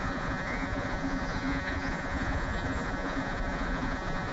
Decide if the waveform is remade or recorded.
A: remade